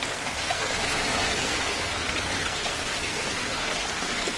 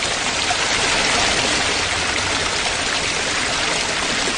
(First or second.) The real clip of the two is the second